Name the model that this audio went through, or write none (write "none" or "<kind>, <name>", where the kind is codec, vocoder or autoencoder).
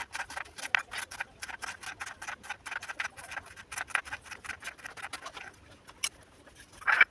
none